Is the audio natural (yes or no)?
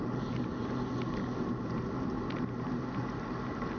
yes